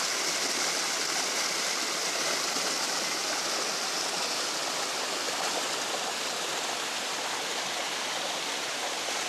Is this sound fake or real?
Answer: real